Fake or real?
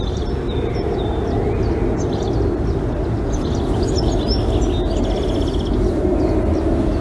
real